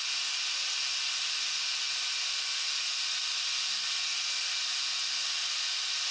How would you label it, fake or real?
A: real